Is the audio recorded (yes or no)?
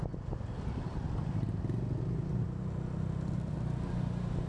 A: yes